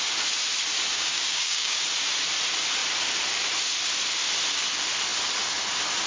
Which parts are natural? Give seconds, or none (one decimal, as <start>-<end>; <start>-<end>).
0.0-0.9; 1.8-6.1